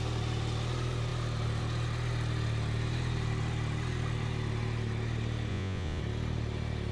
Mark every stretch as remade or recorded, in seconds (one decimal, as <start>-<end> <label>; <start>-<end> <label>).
0.0-5.5 recorded; 5.5-6.0 remade; 6.0-6.9 recorded